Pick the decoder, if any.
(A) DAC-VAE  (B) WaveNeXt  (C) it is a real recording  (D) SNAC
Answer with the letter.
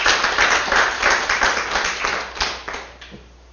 C